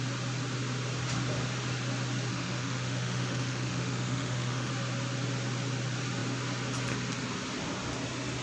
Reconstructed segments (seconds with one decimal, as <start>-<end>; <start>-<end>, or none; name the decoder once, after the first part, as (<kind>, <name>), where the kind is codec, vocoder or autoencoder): 2.3-4.7 (autoencoder, DAC-VAE)

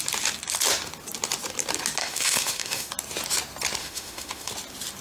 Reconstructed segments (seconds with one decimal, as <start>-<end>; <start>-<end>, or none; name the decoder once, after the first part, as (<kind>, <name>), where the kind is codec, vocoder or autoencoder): 2.0-2.9 (autoencoder, DAC-VAE); 3.8-4.5

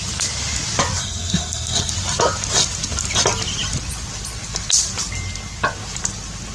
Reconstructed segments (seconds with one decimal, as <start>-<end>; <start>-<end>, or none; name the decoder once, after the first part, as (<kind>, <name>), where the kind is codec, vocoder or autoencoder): 1.0-1.9 (codec, SNAC)

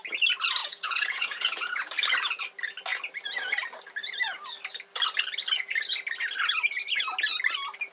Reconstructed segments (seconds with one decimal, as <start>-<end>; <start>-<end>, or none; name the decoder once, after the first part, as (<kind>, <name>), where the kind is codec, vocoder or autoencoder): 0.6-1.8 (vocoder, Vocos)

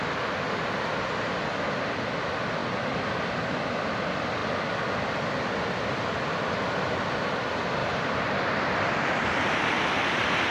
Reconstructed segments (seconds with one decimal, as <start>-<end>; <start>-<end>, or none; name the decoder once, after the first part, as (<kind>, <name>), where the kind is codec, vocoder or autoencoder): 7.8-9.2 (vocoder, BigVGAN v2)

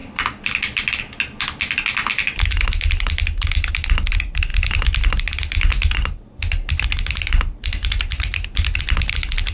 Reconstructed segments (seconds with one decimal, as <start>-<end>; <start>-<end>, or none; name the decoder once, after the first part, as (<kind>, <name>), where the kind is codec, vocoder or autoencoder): none